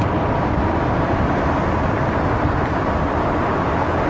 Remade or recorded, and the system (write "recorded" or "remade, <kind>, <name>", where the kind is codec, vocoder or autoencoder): remade, vocoder, BigVGAN v2